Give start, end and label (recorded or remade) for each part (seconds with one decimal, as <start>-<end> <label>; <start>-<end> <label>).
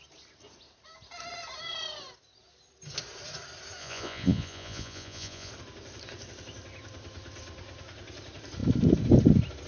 0.0-3.8 recorded; 3.8-5.5 remade; 5.5-9.7 recorded